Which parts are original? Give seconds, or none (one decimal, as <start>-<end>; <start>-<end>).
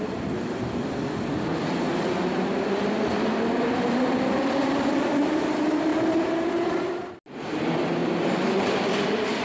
1.5-3.1; 5.9-7.6; 8.0-8.7